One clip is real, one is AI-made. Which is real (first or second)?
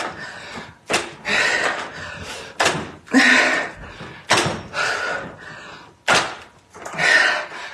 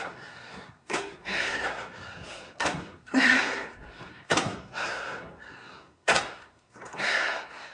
first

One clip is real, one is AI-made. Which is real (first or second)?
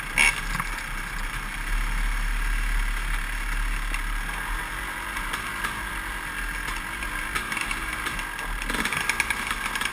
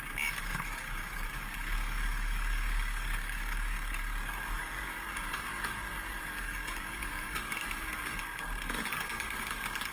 first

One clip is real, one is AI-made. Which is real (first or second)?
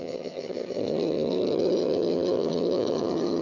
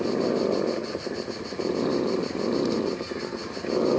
second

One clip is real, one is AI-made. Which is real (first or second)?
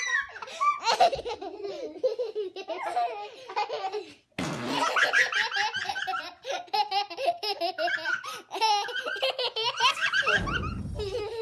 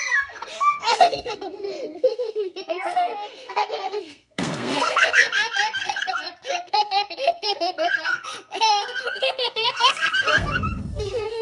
first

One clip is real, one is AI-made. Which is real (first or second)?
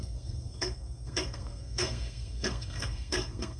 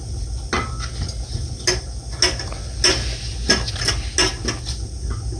second